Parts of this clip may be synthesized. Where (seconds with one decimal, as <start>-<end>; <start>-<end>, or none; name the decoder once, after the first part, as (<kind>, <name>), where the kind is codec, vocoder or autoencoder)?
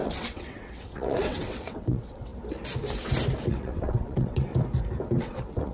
0.0-2.3 (vocoder, WaveNeXt); 3.5-4.5; 5.2-5.7